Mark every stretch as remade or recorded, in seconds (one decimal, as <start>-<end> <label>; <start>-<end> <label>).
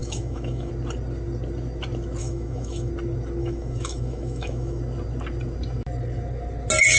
0.0-0.7 remade; 0.7-2.2 recorded; 2.2-2.9 remade; 2.9-3.4 recorded; 3.4-4.8 remade; 4.8-7.0 recorded